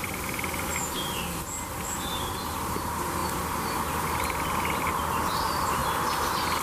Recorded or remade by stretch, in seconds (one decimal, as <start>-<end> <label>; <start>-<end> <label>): 0.0-1.8 recorded; 1.8-3.2 remade; 3.2-4.8 recorded; 4.8-5.8 remade; 5.8-6.6 recorded